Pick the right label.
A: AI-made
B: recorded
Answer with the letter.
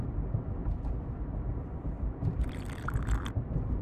A